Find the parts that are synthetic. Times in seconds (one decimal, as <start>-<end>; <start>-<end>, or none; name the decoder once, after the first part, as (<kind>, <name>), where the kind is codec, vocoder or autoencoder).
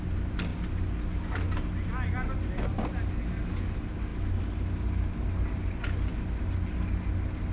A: none